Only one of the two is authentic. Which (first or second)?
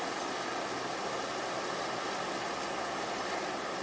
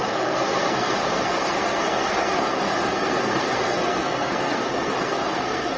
first